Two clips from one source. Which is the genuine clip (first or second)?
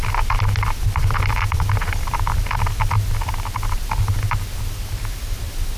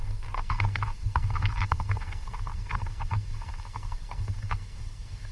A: first